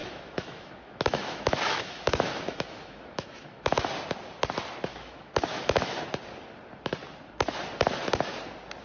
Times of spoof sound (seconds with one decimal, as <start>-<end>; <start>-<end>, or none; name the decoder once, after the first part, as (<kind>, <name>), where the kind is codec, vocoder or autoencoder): 0.0-3.9 (autoencoder, DAC-VAE); 4.9-6.0